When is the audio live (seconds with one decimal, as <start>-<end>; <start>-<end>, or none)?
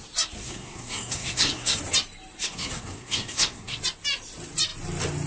0.0-0.4; 1.8-2.4; 3.8-5.3